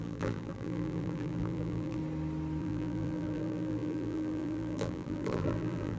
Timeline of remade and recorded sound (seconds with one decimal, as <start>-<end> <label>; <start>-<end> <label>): 0.0-2.0 remade; 2.0-2.6 recorded; 2.6-6.0 remade